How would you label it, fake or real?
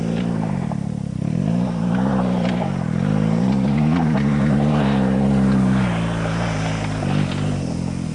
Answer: real